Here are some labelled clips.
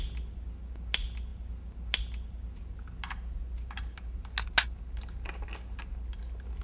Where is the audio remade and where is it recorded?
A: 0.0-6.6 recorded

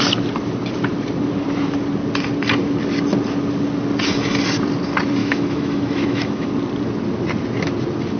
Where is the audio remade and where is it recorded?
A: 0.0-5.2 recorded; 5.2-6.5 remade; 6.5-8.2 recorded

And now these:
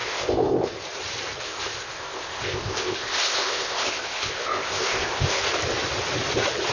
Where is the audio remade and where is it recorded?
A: 0.0-0.8 remade; 0.8-1.4 recorded; 1.4-5.4 remade; 5.4-6.7 recorded